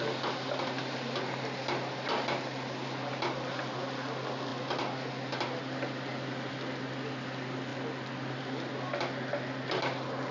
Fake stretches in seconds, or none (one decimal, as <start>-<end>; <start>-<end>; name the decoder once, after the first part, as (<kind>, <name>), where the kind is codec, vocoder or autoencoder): none